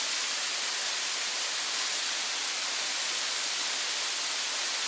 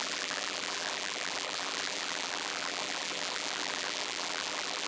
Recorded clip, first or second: first